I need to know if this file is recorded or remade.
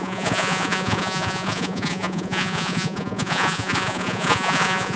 remade